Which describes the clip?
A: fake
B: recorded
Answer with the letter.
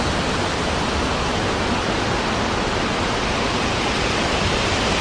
B